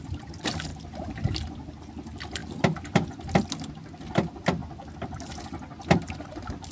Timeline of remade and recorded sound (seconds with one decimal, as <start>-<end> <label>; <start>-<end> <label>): 0.0-0.7 remade; 0.7-1.8 recorded; 1.8-4.6 remade; 4.6-6.0 recorded; 6.0-6.7 remade